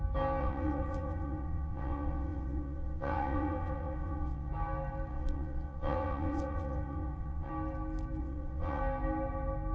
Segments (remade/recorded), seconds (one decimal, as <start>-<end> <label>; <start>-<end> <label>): 0.0-0.4 recorded; 0.4-4.5 remade; 4.5-5.1 recorded; 5.1-7.5 remade; 7.5-8.2 recorded; 8.2-8.8 remade; 8.8-9.7 recorded